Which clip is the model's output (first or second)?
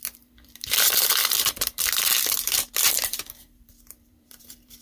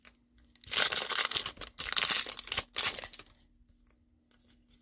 first